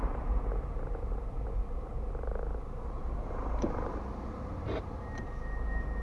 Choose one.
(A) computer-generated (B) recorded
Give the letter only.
A